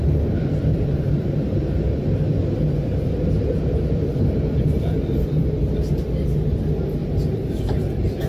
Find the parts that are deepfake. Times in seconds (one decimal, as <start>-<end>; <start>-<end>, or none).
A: 0.7-2.1; 5.4-5.9; 7.0-7.6